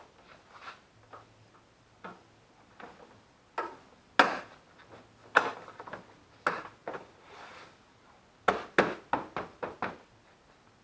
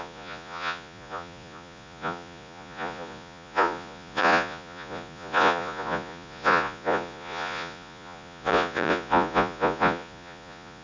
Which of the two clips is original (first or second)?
first